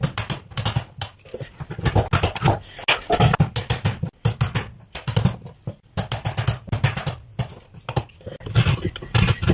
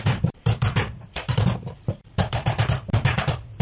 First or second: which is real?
first